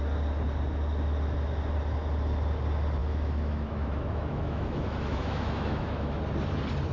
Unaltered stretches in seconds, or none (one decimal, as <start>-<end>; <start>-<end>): 0.0-3.0; 6.2-6.9